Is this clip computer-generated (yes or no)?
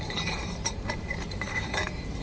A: yes